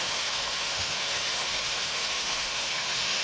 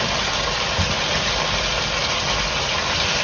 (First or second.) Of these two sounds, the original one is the second